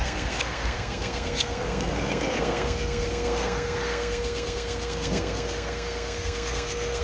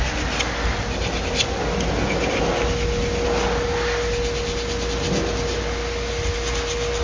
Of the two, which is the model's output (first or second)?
first